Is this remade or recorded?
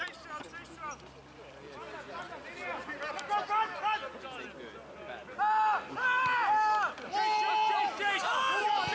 recorded